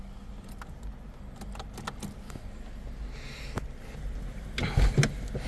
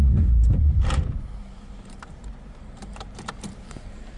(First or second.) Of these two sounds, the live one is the first